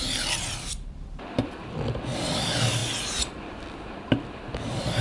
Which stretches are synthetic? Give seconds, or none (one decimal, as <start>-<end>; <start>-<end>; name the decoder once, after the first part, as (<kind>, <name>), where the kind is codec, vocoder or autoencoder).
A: 0.0-2.8 (vocoder, BigVGAN v2); 4.6-5.0